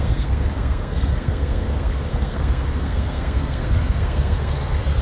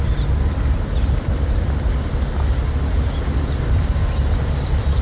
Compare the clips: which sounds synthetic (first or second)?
first